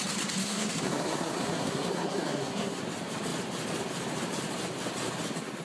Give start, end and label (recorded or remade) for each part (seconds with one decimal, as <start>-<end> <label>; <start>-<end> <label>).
0.0-0.4 recorded; 0.4-2.8 remade; 2.8-5.6 recorded